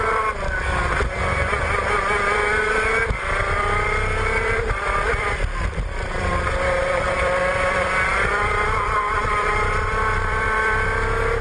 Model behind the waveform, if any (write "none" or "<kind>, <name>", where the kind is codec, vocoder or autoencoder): vocoder, BigVGAN v2